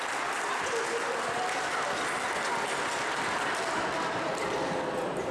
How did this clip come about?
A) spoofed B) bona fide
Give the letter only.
B